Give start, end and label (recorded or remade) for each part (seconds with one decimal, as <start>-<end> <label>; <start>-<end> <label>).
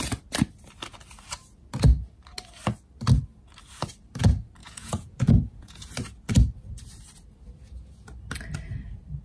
0.0-4.6 recorded; 4.6-5.9 remade; 5.9-9.2 recorded